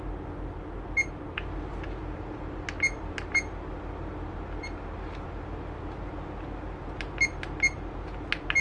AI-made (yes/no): no